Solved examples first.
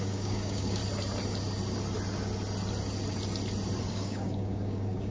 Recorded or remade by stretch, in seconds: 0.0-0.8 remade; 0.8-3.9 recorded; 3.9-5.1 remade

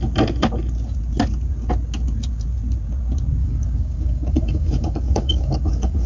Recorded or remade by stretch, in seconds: 0.0-3.4 recorded; 3.4-6.1 remade